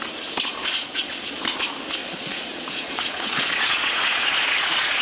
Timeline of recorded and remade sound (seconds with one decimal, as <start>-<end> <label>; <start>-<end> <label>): 0.0-0.6 recorded; 0.6-1.4 remade; 1.4-2.0 recorded; 2.0-5.0 remade